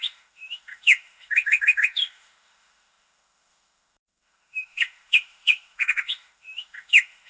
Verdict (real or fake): fake